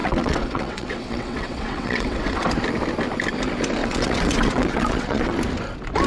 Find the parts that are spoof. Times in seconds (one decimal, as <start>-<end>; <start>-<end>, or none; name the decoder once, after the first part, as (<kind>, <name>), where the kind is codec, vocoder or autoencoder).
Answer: 0.0-2.4 (vocoder, WaveNeXt); 3.8-5.3